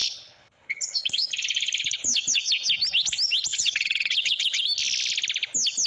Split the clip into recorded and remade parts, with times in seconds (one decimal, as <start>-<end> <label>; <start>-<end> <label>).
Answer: 0.0-2.4 remade; 2.4-3.5 recorded; 3.5-4.6 remade; 4.6-5.9 recorded